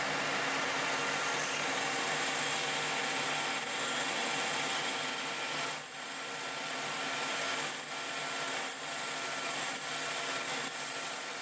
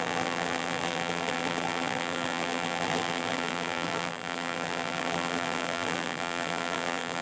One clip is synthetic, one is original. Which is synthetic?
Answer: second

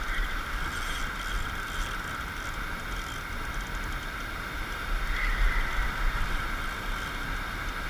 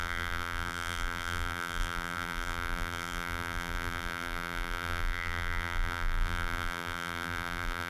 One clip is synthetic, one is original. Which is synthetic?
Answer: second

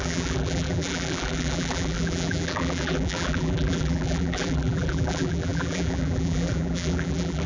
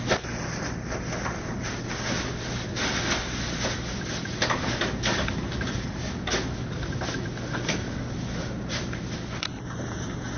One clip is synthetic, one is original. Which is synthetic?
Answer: first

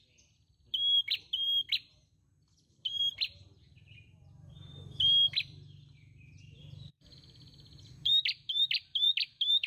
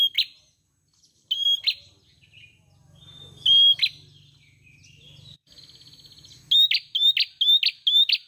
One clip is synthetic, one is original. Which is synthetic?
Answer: first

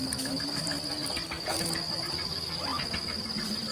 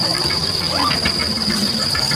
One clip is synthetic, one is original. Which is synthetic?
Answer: second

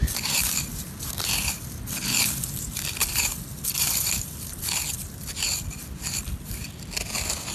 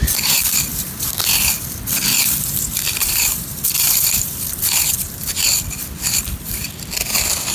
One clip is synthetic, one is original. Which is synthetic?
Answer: second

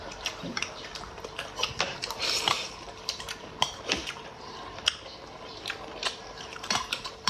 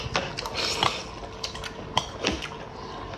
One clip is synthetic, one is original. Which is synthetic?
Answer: first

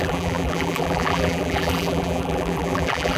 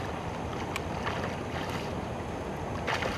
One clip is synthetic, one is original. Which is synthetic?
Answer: first